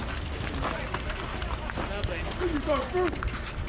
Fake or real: real